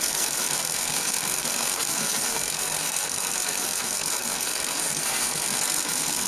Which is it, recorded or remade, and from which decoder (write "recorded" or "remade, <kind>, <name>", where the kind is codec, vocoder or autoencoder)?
remade, codec, SNAC